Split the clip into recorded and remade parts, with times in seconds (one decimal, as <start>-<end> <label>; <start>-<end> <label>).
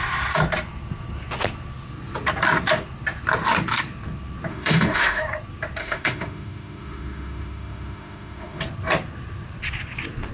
0.0-4.5 recorded; 4.5-5.2 remade; 5.2-5.8 recorded; 5.8-8.6 remade; 8.6-10.3 recorded